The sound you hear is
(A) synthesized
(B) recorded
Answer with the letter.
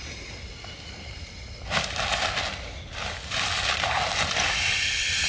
B